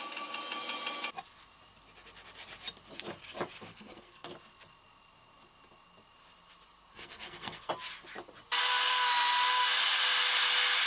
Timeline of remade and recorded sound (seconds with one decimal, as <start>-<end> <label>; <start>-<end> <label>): 0.0-3.7 recorded; 3.7-4.3 remade; 4.3-6.9 recorded; 6.9-7.7 remade; 7.7-10.9 recorded